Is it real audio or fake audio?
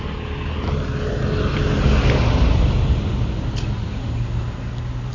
real